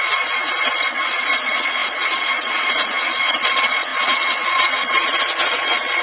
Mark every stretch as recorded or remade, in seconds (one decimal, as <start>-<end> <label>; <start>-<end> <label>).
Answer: 0.0-6.0 remade